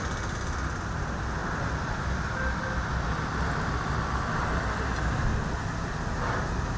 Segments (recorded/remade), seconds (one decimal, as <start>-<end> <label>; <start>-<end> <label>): 0.0-6.8 recorded

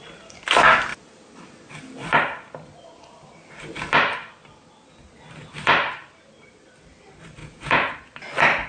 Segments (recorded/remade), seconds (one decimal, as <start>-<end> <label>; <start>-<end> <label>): 0.0-7.4 recorded; 7.4-7.9 remade; 7.9-8.7 recorded

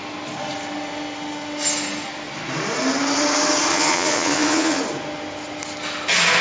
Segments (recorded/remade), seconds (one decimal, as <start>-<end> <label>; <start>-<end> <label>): 0.0-3.7 recorded; 3.7-4.8 remade; 4.8-6.4 recorded

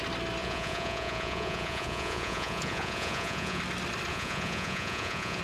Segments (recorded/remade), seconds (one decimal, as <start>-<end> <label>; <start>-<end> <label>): 0.0-0.4 recorded; 0.4-3.6 remade; 3.6-4.1 recorded; 4.1-5.4 remade

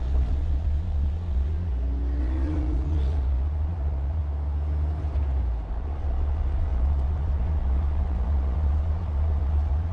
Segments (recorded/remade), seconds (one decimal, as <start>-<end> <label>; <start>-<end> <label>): 0.0-1.7 remade; 1.7-2.2 recorded; 2.2-4.2 remade; 4.2-5.7 recorded; 5.7-9.9 remade